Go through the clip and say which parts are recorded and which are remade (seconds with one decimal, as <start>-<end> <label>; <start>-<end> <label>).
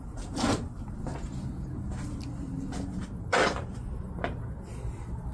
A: 0.0-5.3 recorded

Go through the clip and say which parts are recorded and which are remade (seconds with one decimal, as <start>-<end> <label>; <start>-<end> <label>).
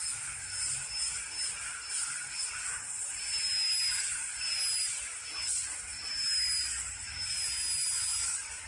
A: 0.0-8.7 recorded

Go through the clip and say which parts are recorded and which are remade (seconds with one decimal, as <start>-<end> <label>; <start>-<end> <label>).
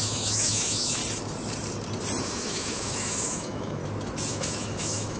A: 0.0-1.0 remade; 1.0-2.2 recorded; 2.2-3.8 remade; 3.8-4.3 recorded; 4.3-5.2 remade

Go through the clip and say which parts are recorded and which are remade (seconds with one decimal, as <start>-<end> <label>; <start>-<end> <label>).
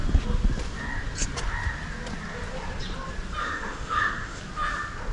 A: 0.0-3.4 recorded; 3.4-4.4 remade; 4.4-5.1 recorded